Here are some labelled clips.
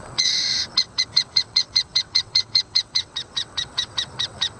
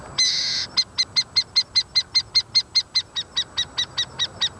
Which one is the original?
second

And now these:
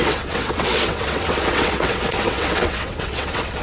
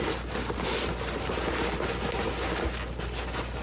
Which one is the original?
second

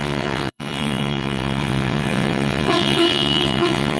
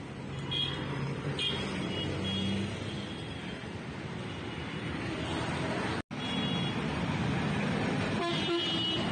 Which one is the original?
second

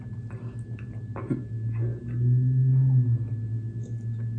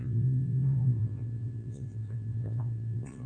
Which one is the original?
first